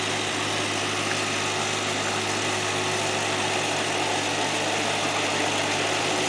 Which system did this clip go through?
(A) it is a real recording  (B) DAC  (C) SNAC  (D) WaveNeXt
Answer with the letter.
A